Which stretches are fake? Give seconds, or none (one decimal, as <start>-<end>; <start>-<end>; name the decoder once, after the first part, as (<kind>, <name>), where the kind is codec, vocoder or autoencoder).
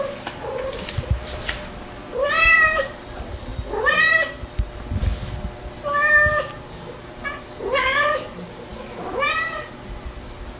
0.0-3.5 (vocoder, BigVGAN v2); 6.6-10.6